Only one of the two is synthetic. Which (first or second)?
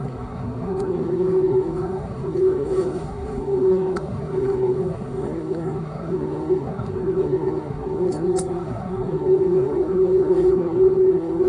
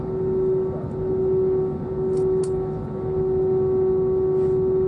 first